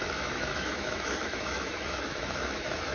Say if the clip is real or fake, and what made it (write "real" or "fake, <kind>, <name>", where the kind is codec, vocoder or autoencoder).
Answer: fake, autoencoder, DAC-VAE